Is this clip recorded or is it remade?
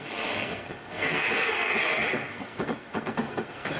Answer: remade